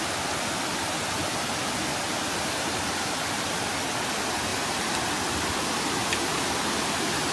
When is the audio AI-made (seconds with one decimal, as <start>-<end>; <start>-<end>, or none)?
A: 1.9-3.7; 6.0-6.5